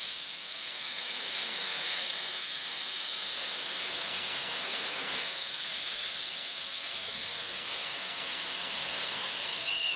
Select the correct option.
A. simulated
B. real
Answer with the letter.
A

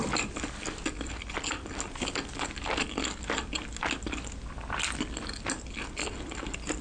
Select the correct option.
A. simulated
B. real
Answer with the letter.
B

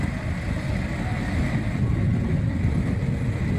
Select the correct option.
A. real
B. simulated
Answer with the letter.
A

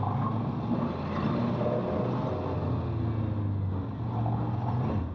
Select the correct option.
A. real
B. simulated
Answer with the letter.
A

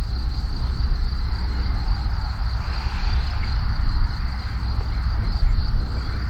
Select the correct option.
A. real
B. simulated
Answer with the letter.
A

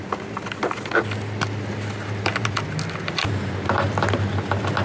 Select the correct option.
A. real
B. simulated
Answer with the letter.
A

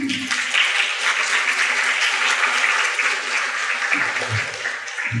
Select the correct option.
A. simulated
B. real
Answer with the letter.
B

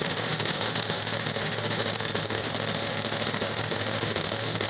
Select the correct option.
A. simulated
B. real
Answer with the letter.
A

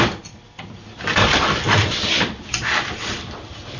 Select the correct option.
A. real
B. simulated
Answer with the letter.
B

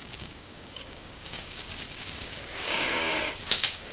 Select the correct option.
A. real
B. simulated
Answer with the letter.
B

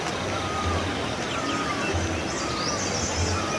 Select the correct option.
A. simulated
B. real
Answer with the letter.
B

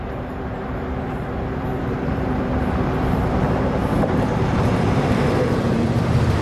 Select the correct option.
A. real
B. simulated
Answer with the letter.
B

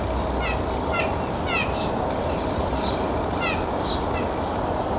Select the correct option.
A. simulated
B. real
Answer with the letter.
B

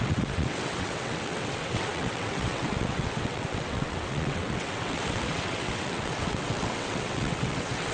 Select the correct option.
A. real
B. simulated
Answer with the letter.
B